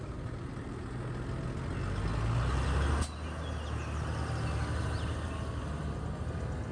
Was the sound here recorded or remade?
recorded